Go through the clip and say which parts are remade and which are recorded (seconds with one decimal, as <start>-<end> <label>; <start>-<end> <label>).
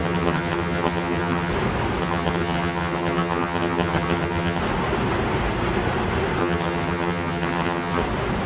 0.0-1.5 remade; 1.5-2.0 recorded; 2.0-4.6 remade; 4.6-6.4 recorded; 6.4-8.0 remade; 8.0-8.5 recorded